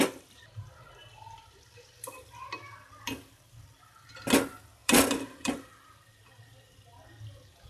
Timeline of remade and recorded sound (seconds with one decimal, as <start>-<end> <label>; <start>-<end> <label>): 0.0-1.0 recorded; 1.0-1.5 remade; 1.5-4.8 recorded; 4.8-7.0 remade; 7.0-7.7 recorded